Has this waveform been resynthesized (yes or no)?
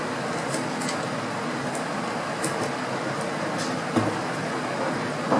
no